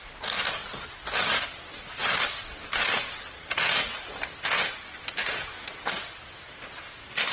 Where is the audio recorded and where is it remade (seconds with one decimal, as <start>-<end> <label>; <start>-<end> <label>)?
0.0-7.3 recorded